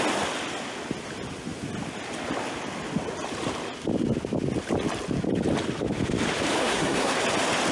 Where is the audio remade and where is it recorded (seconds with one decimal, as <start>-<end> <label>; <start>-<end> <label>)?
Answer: 0.0-6.6 recorded; 6.6-7.2 remade; 7.2-7.7 recorded